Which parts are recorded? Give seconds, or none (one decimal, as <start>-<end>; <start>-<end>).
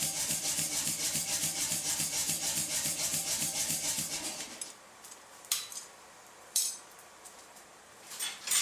none